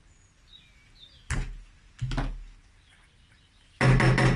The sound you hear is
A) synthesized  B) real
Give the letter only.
B